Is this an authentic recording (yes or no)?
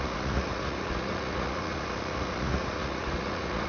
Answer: no